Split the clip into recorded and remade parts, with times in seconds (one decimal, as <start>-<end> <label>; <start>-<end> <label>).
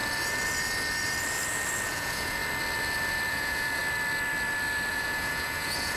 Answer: 0.0-1.9 recorded; 1.9-2.4 remade; 2.4-3.3 recorded; 3.3-3.8 remade; 3.8-4.9 recorded; 4.9-6.0 remade